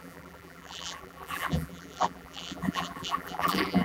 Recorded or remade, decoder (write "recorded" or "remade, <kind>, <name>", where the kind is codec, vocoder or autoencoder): remade, vocoder, BigVGAN v2